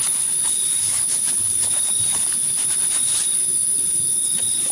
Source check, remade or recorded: remade